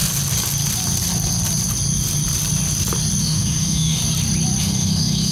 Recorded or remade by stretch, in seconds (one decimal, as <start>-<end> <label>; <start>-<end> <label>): 0.0-3.2 recorded; 3.2-4.0 remade; 4.0-4.6 recorded; 4.6-5.3 remade